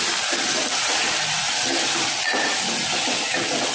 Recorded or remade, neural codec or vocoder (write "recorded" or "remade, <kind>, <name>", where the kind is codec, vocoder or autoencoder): recorded